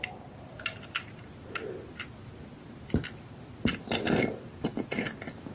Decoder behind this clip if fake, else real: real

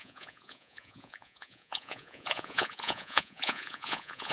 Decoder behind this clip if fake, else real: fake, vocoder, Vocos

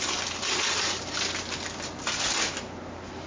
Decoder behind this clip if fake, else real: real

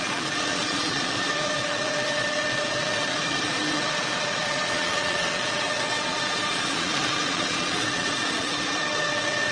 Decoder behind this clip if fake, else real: fake, vocoder, Vocos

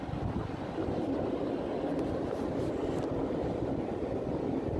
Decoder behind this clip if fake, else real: real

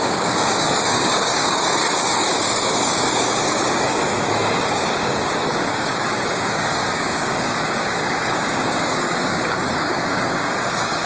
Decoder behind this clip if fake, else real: fake, codec, DAC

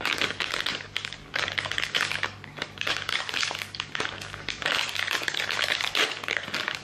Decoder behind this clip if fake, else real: fake, codec, DAC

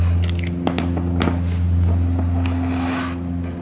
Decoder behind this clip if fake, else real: real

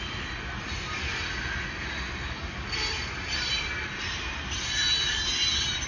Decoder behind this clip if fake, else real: real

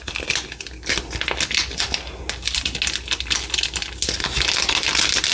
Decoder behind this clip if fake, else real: real